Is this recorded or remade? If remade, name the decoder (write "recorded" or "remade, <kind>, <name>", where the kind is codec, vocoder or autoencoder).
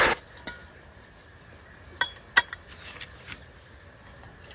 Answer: recorded